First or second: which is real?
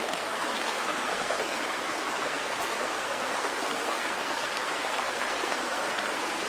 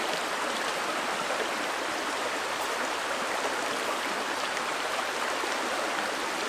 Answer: second